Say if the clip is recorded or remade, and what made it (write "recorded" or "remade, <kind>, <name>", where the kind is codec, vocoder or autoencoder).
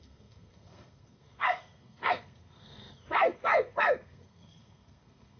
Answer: remade, codec, SNAC